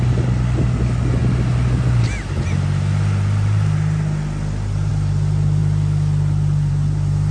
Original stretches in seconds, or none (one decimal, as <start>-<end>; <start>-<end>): 0.0-7.3